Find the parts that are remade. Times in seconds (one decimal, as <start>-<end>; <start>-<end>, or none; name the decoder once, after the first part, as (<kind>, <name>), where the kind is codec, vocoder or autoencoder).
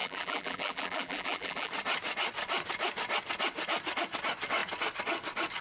0.0-1.7 (vocoder, BigVGAN v2)